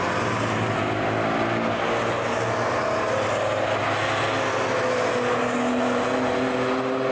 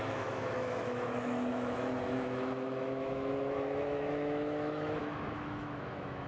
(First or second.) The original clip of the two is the first